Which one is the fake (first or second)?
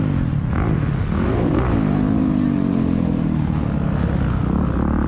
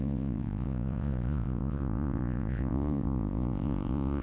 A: second